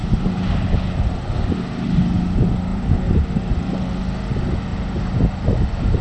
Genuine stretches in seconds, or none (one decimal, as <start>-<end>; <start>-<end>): 1.3-2.7; 4.0-4.7; 5.4-6.0